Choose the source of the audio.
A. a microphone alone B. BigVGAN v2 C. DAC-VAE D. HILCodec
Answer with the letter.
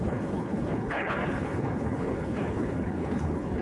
D